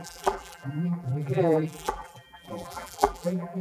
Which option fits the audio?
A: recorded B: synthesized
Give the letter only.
B